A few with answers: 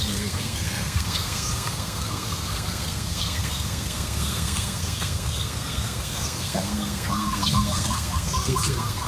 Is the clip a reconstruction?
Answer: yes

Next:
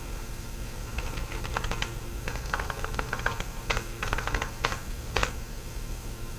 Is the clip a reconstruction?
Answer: yes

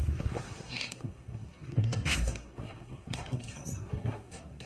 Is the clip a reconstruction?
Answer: yes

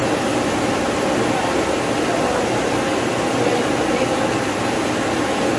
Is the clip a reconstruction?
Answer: no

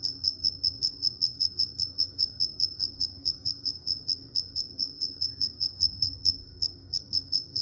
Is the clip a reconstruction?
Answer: yes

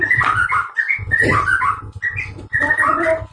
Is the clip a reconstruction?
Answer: no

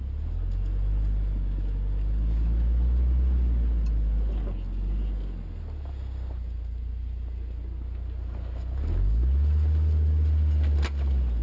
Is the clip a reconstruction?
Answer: no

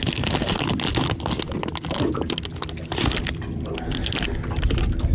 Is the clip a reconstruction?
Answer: no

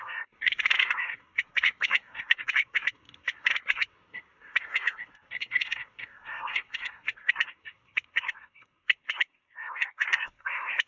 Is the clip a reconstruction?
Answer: yes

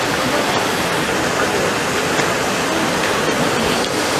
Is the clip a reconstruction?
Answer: no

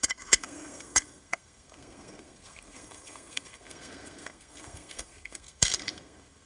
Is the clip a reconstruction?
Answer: yes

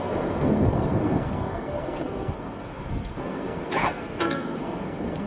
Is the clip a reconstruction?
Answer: yes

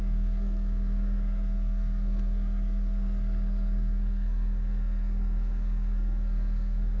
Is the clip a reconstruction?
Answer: yes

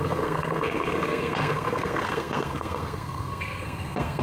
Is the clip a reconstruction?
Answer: yes